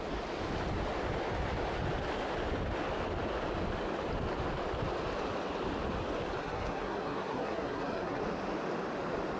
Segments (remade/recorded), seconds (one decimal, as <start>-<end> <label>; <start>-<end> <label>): 0.0-6.4 recorded; 6.4-8.2 remade; 8.2-9.4 recorded